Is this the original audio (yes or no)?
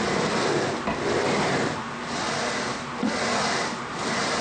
yes